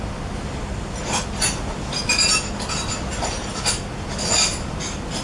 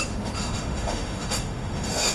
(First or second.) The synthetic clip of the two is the second